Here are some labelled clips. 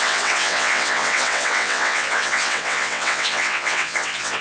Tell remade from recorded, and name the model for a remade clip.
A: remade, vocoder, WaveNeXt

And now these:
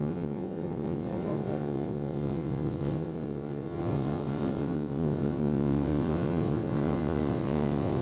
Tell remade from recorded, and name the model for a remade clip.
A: remade, vocoder, WaveNeXt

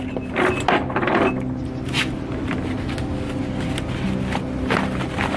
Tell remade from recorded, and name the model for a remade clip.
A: recorded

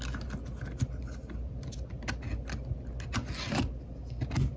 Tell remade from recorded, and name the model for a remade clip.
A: recorded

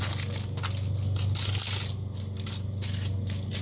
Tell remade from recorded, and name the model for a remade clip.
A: recorded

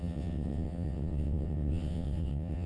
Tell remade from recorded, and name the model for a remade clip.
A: remade, vocoder, WaveNeXt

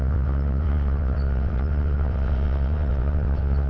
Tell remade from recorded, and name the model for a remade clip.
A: remade, vocoder, WaveNeXt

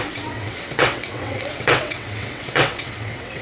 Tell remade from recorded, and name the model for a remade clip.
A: remade, vocoder, WaveNeXt